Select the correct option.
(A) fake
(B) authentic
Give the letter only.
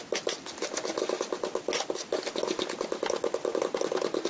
B